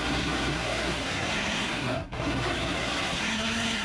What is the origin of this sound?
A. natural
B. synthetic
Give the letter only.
B